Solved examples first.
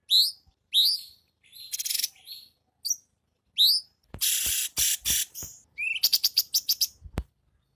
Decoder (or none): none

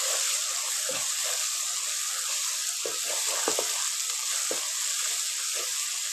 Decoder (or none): none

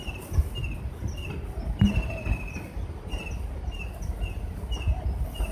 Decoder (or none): none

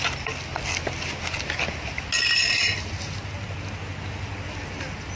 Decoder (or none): none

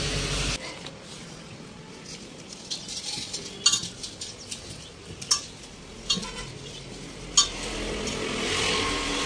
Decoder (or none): none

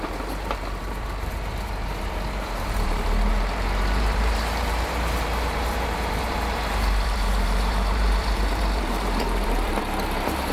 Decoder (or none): vocoder, BigVGAN v2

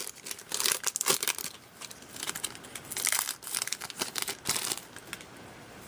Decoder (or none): none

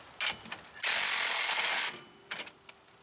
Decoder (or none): none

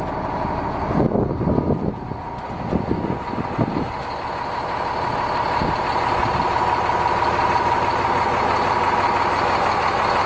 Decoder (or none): none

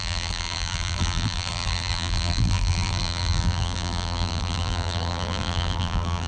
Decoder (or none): vocoder, BigVGAN v2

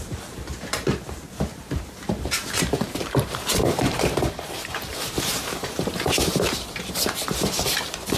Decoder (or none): vocoder, BigVGAN v2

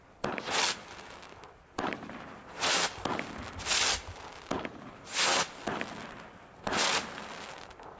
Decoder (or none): vocoder, BigVGAN v2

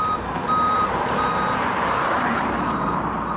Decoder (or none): vocoder, BigVGAN v2